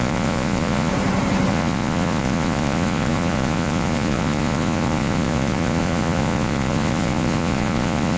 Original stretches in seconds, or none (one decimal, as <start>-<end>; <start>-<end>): 0.9-1.5